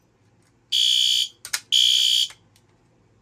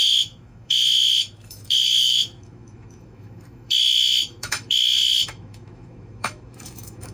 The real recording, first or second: first